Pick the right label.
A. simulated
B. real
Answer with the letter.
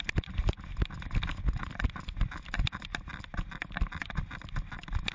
B